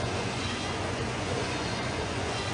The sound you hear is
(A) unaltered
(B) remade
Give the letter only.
B